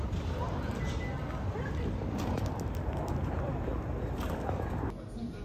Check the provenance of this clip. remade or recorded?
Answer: recorded